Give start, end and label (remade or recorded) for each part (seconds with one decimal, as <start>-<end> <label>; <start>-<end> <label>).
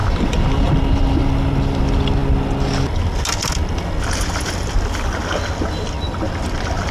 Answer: 0.0-6.9 recorded